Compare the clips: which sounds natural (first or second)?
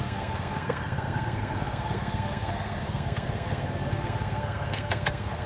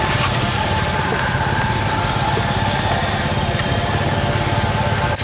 second